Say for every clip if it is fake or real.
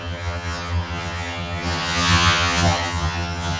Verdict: fake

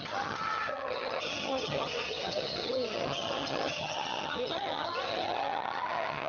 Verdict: fake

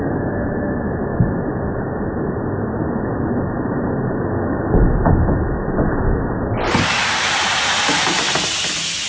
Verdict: real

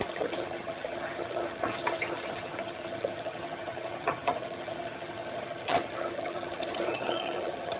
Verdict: fake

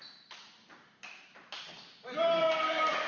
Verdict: real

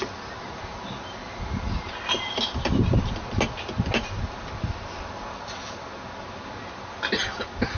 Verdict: real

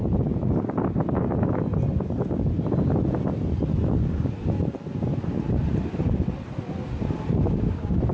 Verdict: real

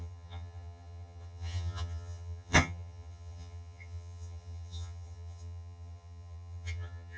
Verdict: fake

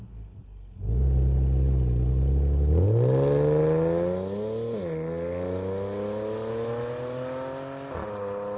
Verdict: real